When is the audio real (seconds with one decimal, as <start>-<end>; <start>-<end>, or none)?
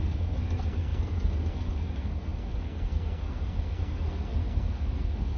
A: none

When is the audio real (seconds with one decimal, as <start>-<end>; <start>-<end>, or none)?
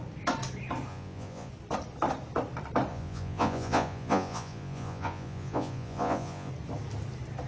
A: 0.0-0.9; 1.5-2.9; 6.5-7.5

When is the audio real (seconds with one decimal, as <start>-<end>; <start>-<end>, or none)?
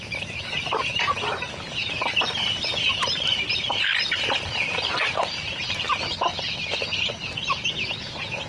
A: 3.9-4.9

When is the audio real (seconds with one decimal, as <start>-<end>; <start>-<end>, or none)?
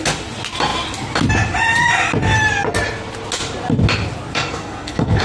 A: 0.0-4.3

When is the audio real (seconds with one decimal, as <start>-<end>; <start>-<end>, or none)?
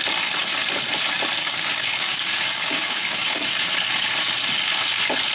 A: 0.0-1.4; 3.4-5.3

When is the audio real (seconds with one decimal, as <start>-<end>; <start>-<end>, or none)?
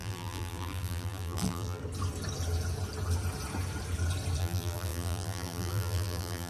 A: 1.8-4.4